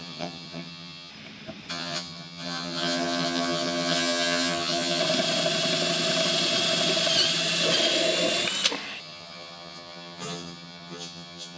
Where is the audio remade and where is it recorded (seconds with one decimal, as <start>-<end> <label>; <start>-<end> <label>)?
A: 0.0-1.1 remade; 1.1-1.7 recorded; 1.7-5.0 remade; 5.0-9.0 recorded; 9.0-11.6 remade